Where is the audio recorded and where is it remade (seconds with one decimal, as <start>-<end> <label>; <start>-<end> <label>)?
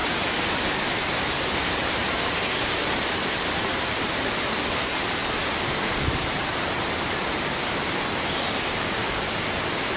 0.0-1.2 recorded; 1.2-2.0 remade; 2.0-2.5 recorded; 2.5-5.2 remade; 5.2-5.9 recorded; 5.9-10.0 remade